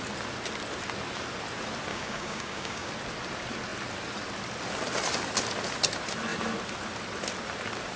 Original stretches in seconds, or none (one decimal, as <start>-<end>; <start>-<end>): 0.0-1.9; 2.9-8.0